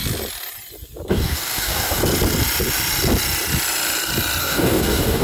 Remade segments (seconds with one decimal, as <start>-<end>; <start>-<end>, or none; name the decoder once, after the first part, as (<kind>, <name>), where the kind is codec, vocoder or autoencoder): 1.1-2.0 (codec, DAC); 4.4-5.2